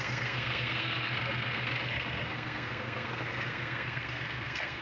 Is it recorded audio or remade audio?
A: remade